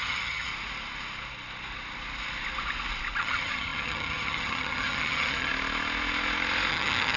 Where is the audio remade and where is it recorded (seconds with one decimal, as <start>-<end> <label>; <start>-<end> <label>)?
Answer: 0.0-0.5 remade; 0.5-3.2 recorded; 3.2-5.5 remade; 5.5-6.7 recorded; 6.7-7.2 remade

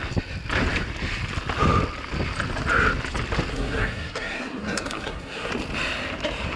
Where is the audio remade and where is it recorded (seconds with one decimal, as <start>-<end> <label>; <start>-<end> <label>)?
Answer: 0.0-3.5 recorded; 3.5-5.5 remade; 5.5-6.6 recorded

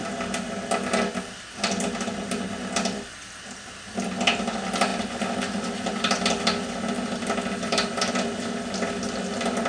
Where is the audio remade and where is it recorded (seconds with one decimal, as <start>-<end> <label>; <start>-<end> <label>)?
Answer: 0.0-9.7 recorded

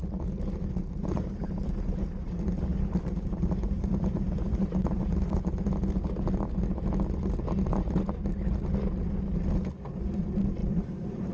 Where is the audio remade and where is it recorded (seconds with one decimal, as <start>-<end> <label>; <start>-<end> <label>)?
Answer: 0.0-0.8 recorded; 0.8-5.3 remade; 5.3-10.6 recorded; 10.6-11.3 remade

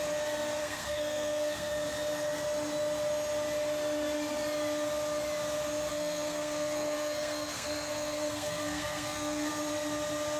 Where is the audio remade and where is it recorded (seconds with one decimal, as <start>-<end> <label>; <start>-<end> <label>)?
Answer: 0.0-0.6 recorded; 0.6-1.7 remade; 1.7-5.9 recorded; 5.9-9.5 remade; 9.5-10.4 recorded

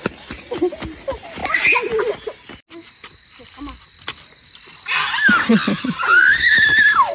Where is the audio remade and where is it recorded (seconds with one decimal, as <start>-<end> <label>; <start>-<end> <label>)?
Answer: 0.0-5.5 recorded; 5.5-7.1 remade